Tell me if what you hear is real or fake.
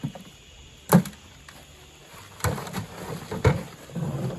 real